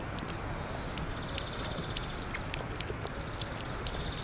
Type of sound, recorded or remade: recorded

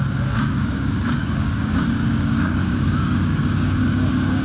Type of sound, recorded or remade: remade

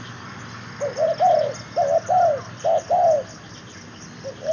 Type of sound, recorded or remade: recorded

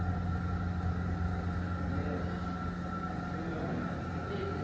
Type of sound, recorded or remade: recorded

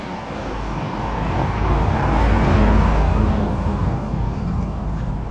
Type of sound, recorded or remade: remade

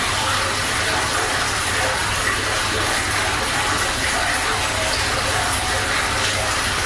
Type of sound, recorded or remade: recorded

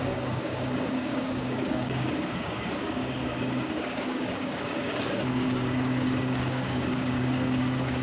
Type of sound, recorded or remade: remade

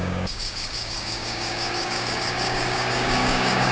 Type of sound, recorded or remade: remade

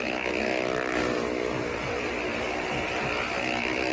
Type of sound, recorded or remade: recorded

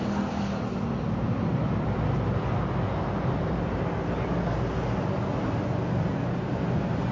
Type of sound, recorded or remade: recorded